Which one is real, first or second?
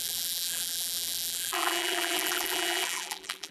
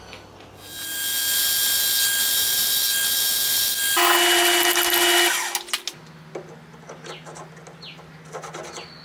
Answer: second